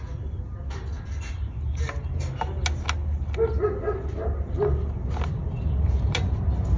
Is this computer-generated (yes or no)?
no